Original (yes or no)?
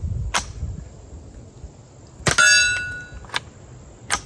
yes